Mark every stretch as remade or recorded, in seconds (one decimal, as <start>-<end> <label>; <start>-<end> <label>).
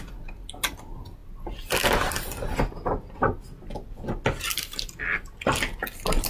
0.0-6.3 recorded